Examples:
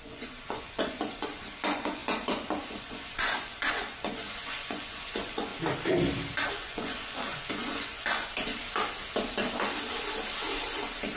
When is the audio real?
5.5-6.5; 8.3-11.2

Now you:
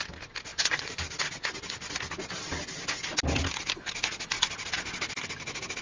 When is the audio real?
0.0-0.5; 1.0-5.8

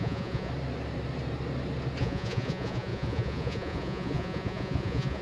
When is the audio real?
0.5-2.0

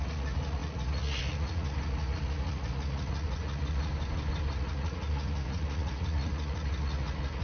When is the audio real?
3.9-4.5

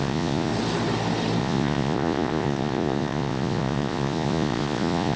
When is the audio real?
0.5-1.4

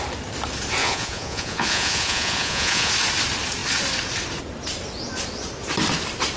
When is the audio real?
0.0-0.8; 2.9-6.4